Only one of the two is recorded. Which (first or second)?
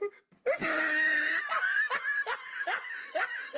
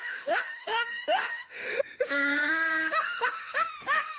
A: first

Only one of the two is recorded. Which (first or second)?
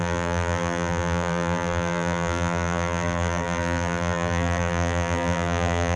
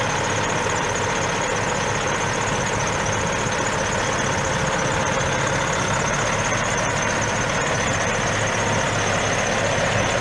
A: second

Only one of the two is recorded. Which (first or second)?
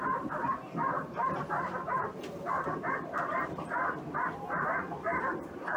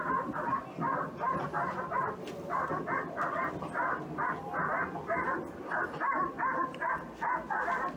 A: second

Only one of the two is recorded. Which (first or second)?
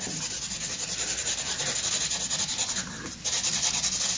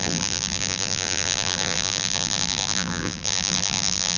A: first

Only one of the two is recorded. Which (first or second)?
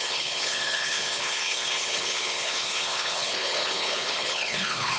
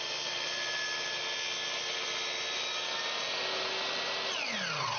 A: second